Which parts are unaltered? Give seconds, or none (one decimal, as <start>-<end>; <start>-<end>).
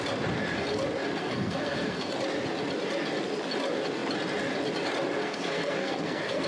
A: 0.0-1.2; 2.1-5.2